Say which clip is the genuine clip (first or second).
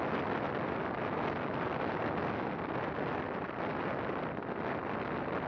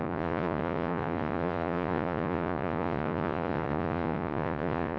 first